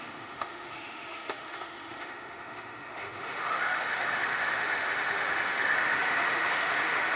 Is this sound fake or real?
fake